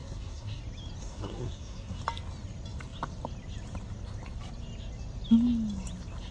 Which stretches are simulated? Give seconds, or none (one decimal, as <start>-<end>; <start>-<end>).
0.0-0.6; 1.0-2.0